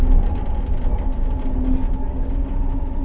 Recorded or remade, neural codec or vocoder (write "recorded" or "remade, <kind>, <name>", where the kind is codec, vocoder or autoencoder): recorded